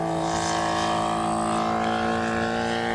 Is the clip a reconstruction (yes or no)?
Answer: no